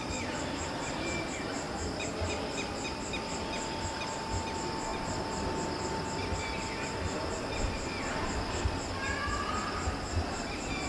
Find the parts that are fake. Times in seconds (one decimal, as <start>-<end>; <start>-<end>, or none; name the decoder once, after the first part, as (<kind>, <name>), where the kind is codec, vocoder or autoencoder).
none